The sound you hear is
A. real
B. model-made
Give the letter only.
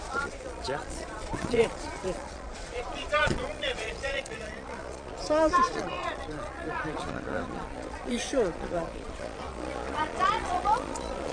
B